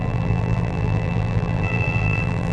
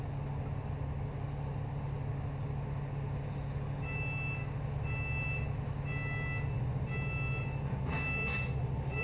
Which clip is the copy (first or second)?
first